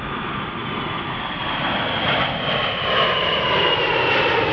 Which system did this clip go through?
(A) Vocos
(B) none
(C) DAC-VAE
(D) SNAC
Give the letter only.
B